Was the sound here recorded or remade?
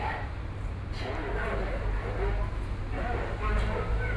recorded